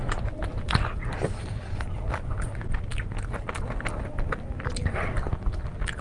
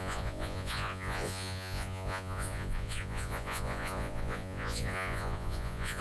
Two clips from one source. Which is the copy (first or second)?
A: second